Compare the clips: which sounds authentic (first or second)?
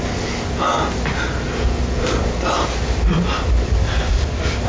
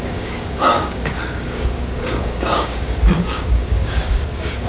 first